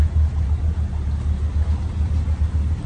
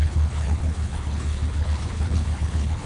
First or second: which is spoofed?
second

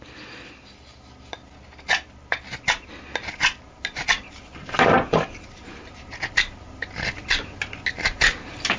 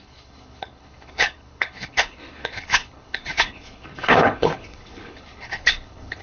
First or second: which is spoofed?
second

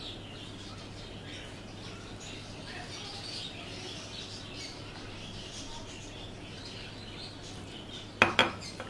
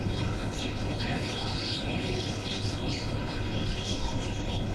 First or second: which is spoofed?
second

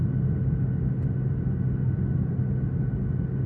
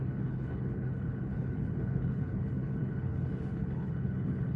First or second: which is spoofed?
second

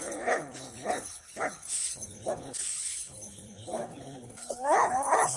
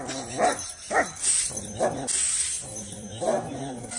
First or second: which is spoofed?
first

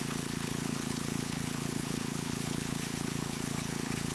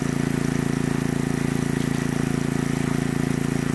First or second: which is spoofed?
first